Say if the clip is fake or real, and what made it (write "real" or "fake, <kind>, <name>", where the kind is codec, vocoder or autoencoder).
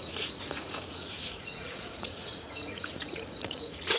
fake, vocoder, Vocos